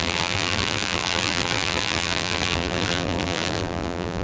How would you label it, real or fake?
fake